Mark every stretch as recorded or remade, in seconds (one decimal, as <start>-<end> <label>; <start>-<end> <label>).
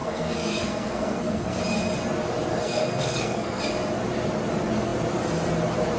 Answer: 0.0-1.6 remade; 1.6-2.5 recorded; 2.5-3.6 remade; 3.6-6.0 recorded